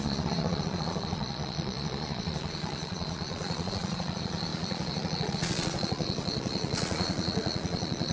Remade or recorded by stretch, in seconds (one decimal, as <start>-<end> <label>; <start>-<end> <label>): 0.0-8.1 remade